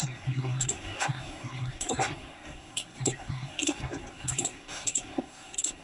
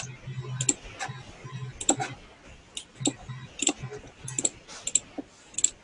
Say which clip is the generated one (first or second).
first